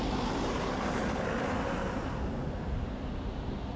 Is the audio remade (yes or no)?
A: no